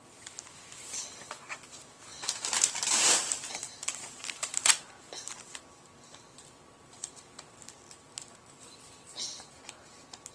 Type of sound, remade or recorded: recorded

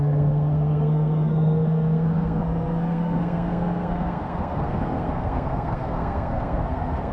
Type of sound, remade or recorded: remade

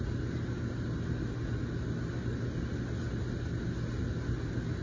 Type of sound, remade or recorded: recorded